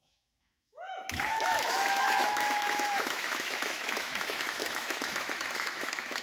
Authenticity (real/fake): fake